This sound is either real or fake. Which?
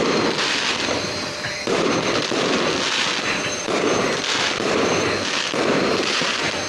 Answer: fake